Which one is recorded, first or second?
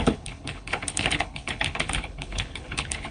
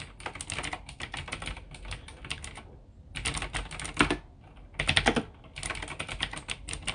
second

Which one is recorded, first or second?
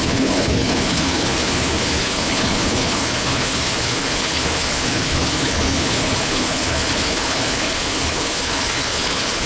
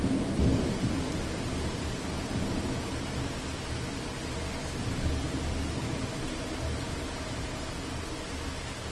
second